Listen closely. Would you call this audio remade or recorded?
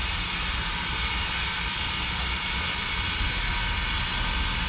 recorded